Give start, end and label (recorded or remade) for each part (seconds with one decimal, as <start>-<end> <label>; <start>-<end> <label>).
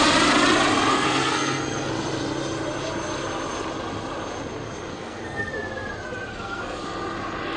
0.0-0.9 recorded; 0.9-1.9 remade; 1.9-4.9 recorded; 4.9-5.5 remade; 5.5-6.3 recorded; 6.3-6.8 remade; 6.8-7.6 recorded